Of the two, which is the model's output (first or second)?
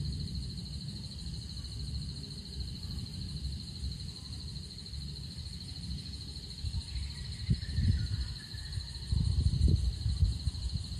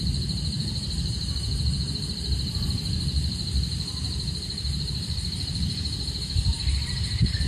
second